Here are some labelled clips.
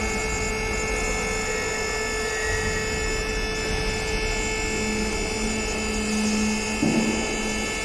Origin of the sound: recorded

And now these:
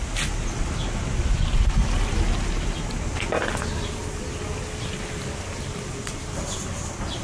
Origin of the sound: recorded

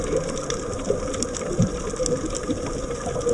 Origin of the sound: recorded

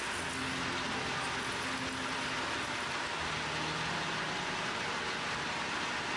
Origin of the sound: recorded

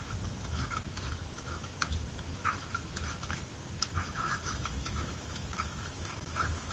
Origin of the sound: remade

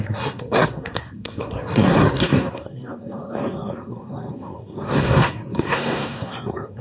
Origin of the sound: remade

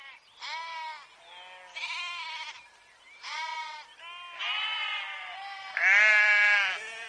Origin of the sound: recorded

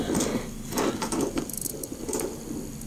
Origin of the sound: recorded